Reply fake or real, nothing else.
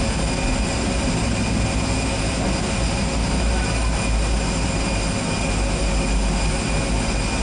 real